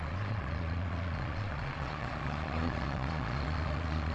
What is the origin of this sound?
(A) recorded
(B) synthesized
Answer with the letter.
B